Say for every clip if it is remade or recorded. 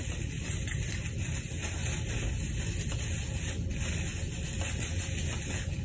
recorded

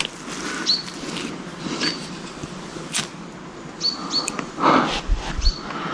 recorded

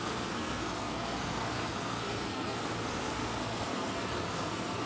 remade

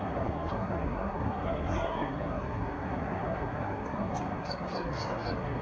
remade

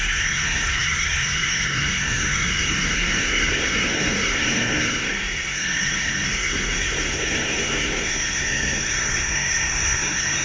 remade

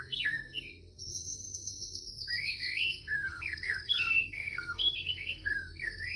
remade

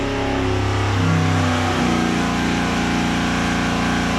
recorded